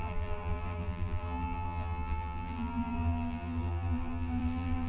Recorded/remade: remade